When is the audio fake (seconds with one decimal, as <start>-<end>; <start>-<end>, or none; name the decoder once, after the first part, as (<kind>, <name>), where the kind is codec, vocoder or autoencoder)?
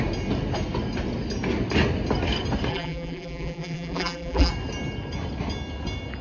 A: 2.7-4.5 (vocoder, BigVGAN v2)